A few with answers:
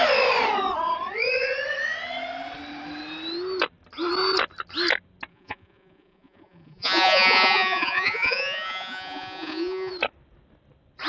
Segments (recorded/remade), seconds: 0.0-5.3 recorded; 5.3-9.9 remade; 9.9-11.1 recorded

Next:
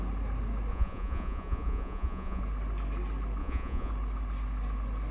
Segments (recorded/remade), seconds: 0.0-0.7 recorded; 0.7-2.4 remade; 2.4-3.4 recorded; 3.4-3.9 remade; 3.9-5.1 recorded

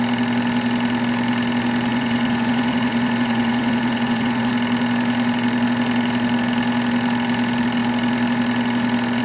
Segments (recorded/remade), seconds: 0.0-1.9 recorded; 1.9-4.5 remade; 4.5-9.2 recorded

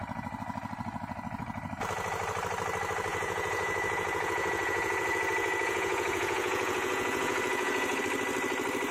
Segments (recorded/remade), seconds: 0.0-3.1 recorded; 3.1-8.0 remade; 8.0-8.9 recorded